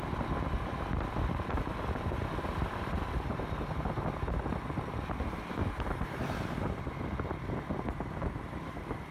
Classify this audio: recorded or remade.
recorded